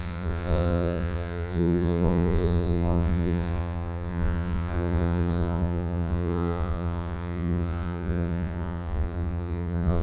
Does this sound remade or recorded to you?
remade